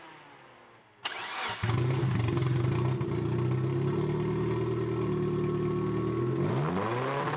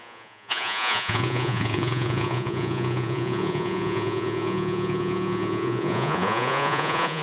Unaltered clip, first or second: first